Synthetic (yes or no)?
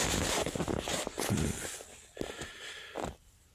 no